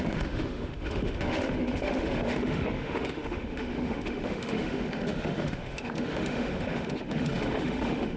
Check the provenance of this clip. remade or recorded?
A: remade